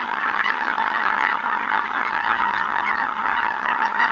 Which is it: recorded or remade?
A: remade